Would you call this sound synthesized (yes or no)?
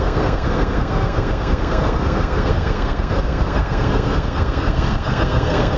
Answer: yes